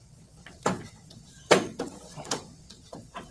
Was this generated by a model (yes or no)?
yes